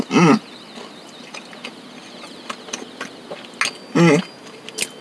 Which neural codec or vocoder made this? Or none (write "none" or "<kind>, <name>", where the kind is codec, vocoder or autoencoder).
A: none